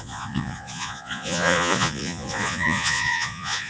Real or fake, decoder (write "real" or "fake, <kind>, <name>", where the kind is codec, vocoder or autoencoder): fake, vocoder, Vocos